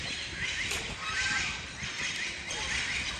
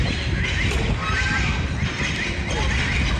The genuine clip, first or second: second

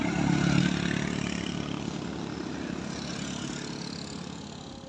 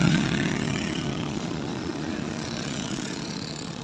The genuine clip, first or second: first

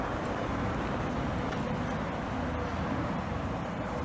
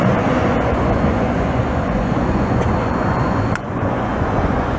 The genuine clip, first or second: first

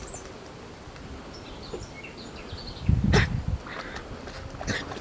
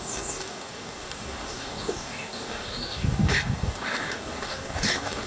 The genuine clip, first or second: first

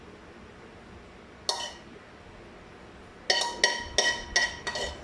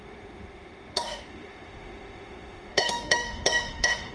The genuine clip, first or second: first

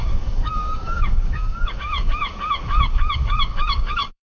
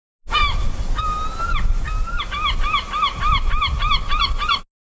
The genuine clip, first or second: second